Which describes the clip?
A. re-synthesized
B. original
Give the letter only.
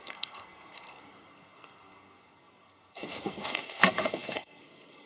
A